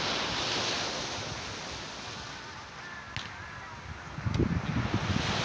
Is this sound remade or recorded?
recorded